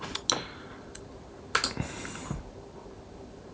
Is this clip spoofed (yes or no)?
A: no